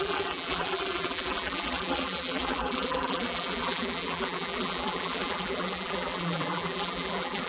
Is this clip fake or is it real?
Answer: fake